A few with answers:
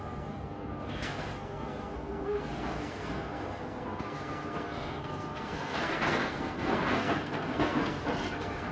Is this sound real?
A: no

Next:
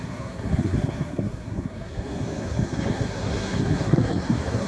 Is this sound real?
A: no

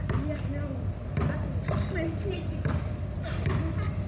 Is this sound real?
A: yes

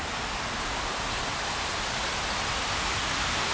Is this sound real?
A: yes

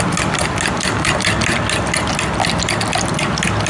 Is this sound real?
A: yes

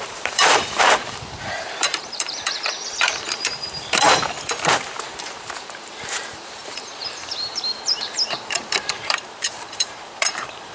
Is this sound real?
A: no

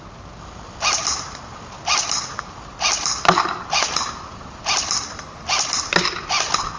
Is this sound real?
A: yes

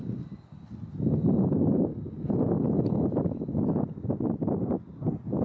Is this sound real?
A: yes